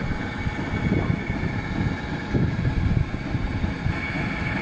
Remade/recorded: recorded